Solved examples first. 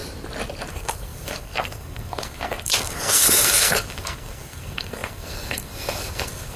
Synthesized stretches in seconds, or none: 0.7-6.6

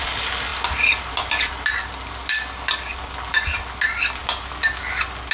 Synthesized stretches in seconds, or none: none

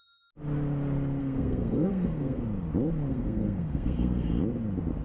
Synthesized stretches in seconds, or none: 1.2-2.4; 3.1-4.3

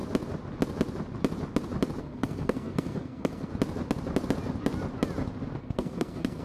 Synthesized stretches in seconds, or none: 2.0-3.5; 5.6-6.4

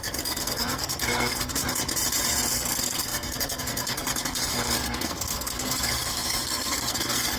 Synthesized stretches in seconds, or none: 0.0-1.5; 2.5-7.4

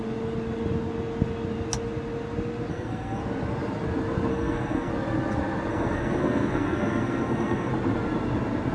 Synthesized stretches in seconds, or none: 2.7-3.2; 4.3-4.9; 5.7-7.7